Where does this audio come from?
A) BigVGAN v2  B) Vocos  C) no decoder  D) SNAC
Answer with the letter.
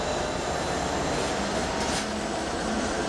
C